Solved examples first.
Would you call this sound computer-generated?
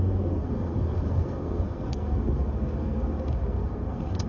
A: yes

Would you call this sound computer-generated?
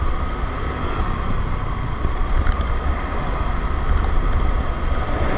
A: no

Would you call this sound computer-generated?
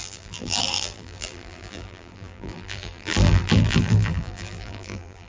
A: yes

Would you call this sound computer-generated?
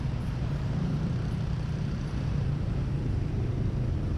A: yes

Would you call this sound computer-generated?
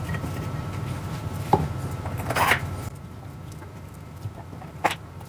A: yes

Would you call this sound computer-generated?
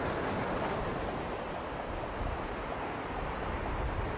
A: no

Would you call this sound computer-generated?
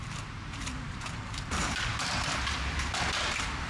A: yes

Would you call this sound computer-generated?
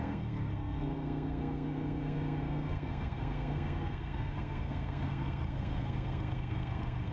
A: yes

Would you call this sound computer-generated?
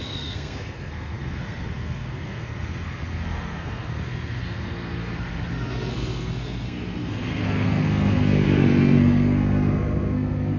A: yes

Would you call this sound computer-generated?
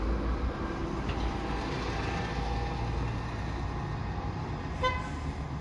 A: no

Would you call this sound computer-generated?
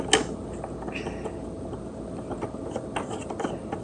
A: no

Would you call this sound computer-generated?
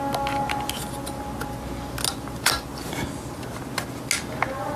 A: no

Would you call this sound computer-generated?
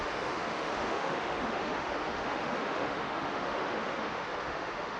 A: yes